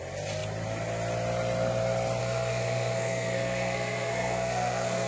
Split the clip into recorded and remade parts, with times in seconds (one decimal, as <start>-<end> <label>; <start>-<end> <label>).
0.0-2.2 recorded; 2.2-5.1 remade